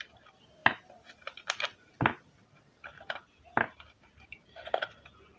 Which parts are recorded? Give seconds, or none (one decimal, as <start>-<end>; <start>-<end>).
0.0-5.4